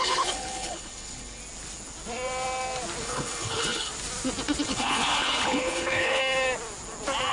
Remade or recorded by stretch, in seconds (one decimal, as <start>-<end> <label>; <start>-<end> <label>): 0.0-1.4 remade; 1.4-3.0 recorded; 3.0-3.9 remade; 3.9-4.6 recorded; 4.6-6.2 remade; 6.2-7.3 recorded

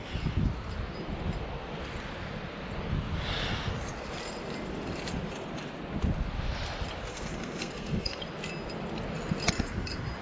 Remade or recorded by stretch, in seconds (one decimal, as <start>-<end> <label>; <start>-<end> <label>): 0.0-7.1 recorded; 7.1-8.2 remade; 8.2-10.2 recorded

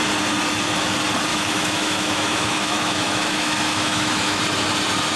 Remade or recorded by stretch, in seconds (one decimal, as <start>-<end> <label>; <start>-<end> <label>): 0.0-1.3 recorded; 1.3-4.4 remade; 4.4-5.2 recorded